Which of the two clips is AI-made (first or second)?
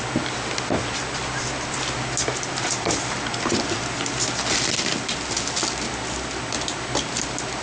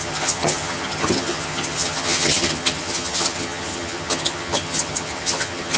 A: second